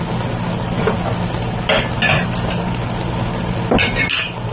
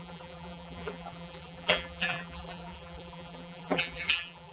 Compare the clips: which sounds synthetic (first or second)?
second